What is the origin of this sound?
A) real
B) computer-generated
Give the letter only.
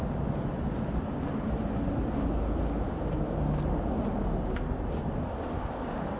A